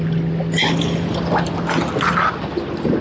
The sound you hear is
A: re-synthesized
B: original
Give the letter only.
B